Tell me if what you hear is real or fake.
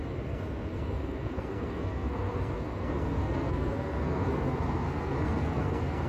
fake